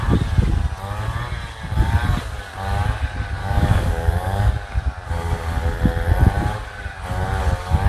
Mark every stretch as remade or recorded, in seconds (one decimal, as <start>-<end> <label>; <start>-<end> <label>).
0.0-3.4 recorded; 3.4-4.5 remade; 4.5-7.9 recorded